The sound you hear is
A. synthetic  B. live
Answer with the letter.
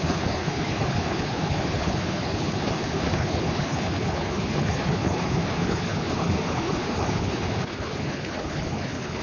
A